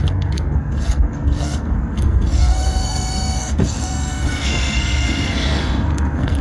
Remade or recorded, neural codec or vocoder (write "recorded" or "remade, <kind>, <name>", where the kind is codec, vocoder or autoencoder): remade, codec, SNAC